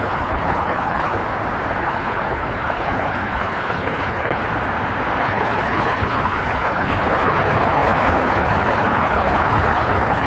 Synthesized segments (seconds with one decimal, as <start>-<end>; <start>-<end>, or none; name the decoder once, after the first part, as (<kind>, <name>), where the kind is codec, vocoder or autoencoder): 0.0-1.2 (codec, HILCodec); 1.8-4.4; 5.2-10.3